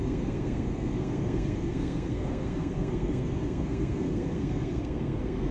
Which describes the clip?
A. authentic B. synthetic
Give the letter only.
B